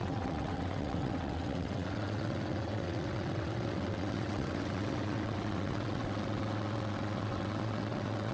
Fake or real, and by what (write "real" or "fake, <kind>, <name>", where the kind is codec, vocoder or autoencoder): fake, vocoder, WaveNeXt